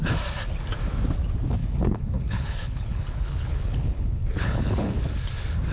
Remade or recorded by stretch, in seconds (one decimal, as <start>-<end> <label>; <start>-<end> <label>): 0.0-1.6 recorded; 1.6-5.0 remade; 5.0-5.7 recorded